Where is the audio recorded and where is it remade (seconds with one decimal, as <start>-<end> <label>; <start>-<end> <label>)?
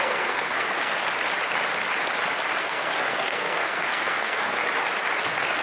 0.0-1.0 remade; 1.0-2.6 recorded; 2.6-4.6 remade; 4.6-5.6 recorded